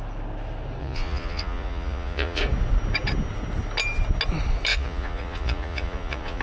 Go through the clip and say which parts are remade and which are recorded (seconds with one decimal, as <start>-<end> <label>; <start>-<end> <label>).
0.0-0.8 recorded; 0.8-2.4 remade; 2.4-4.7 recorded; 4.7-6.4 remade